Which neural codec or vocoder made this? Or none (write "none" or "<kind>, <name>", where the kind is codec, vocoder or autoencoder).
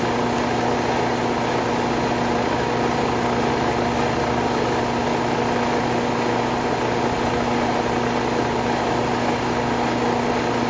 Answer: none